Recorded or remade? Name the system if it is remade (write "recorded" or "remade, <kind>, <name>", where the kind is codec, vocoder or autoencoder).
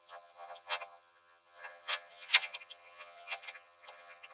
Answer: remade, vocoder, HiFi-GAN